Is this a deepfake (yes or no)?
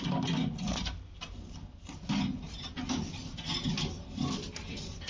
no